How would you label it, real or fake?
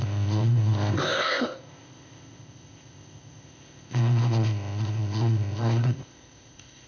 fake